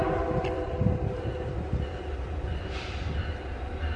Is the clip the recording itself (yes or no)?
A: yes